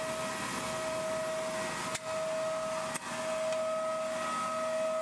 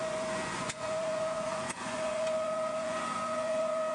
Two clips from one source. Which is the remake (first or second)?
second